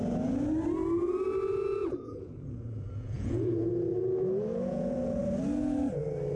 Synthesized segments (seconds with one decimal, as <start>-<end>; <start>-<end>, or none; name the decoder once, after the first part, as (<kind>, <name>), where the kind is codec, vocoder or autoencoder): 1.8-5.2 (vocoder, Vocos)